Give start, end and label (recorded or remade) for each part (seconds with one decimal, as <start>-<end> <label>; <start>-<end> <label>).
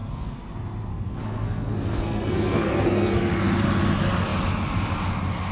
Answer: 0.0-0.5 remade; 0.5-0.9 recorded; 0.9-3.4 remade; 3.4-5.5 recorded